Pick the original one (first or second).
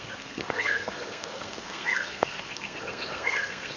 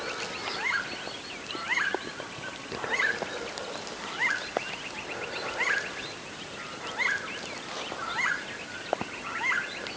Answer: second